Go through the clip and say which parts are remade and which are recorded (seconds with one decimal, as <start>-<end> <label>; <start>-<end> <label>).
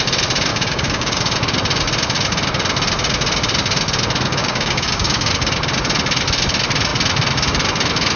0.0-0.5 recorded; 0.5-1.2 remade; 1.2-4.4 recorded; 4.4-5.3 remade; 5.3-8.2 recorded